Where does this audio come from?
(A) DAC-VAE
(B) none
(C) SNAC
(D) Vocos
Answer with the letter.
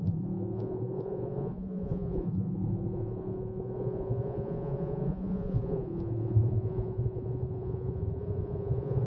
D